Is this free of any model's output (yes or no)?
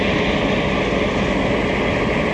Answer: yes